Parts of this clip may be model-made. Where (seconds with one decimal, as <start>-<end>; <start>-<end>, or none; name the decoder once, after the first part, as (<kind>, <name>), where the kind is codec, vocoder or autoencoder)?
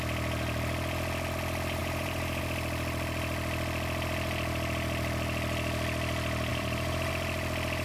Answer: 1.8-2.4 (vocoder, BigVGAN v2); 6.5-7.1